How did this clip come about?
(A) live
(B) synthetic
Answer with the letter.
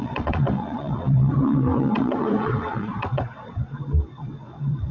B